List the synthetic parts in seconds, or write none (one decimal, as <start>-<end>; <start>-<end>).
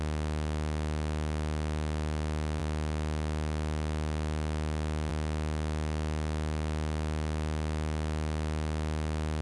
none